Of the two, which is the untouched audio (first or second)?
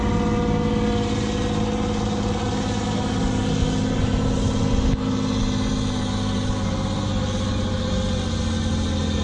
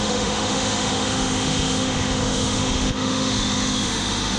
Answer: first